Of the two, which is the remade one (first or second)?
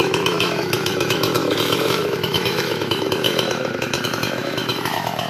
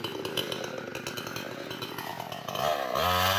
first